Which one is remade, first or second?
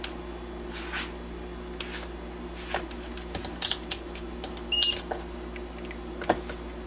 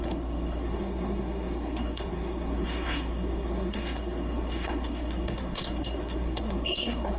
second